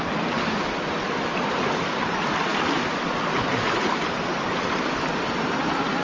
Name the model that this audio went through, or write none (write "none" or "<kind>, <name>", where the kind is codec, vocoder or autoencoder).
none